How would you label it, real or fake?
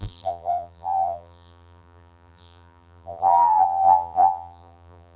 fake